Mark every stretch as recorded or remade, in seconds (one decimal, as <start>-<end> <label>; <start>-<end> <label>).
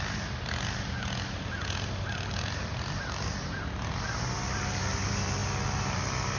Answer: 0.0-6.4 recorded